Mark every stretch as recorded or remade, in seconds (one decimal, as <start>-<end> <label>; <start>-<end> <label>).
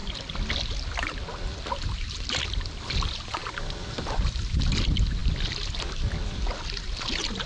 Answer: 0.0-7.5 recorded